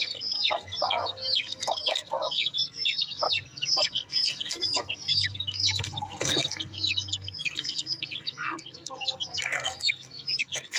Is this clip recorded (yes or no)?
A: no